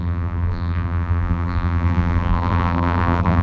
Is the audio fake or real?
fake